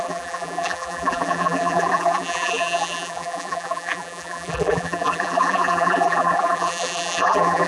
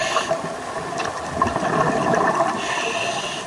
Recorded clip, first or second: second